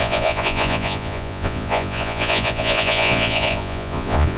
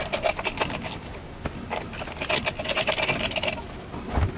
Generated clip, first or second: first